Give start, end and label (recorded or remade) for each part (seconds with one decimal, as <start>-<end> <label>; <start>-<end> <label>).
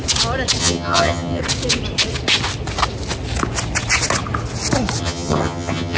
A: 0.0-0.6 recorded; 0.6-1.4 remade; 1.4-5.0 recorded; 5.0-6.0 remade